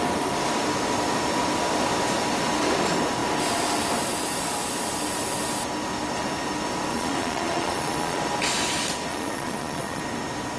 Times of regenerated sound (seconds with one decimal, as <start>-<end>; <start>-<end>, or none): 6.9-8.2; 9.1-10.0